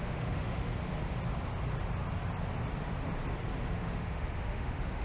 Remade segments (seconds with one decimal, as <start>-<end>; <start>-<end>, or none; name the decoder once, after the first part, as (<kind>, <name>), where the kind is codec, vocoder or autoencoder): 0.0-0.7 (autoencoder, DAC-VAE); 3.7-5.0